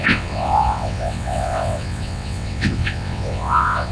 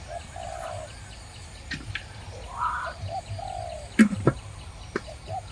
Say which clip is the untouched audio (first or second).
second